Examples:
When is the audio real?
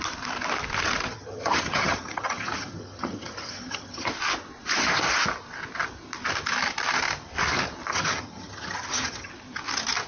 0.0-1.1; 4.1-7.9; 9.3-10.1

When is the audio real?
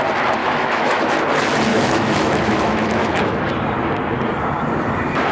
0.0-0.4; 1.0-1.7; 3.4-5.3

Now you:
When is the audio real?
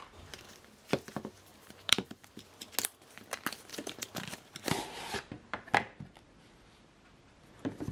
0.0-1.5; 2.3-3.7; 4.5-7.9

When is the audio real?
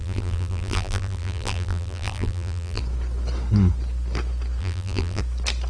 2.8-4.6; 5.2-5.7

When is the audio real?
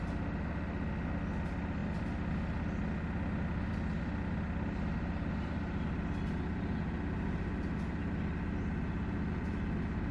0.0-10.1